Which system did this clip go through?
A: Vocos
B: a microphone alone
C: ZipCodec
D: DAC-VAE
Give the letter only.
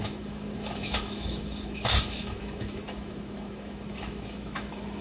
D